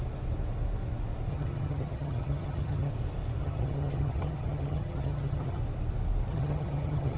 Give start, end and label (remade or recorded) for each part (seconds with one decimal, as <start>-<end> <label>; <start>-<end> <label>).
0.0-1.3 recorded; 1.3-2.9 remade; 2.9-3.4 recorded; 3.4-5.6 remade; 5.6-6.3 recorded; 6.3-7.2 remade